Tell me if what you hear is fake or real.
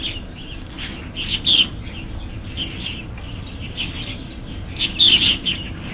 real